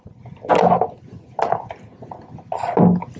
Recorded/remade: recorded